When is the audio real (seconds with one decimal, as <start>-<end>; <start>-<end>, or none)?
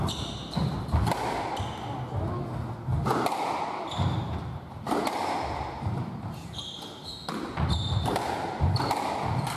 0.0-9.6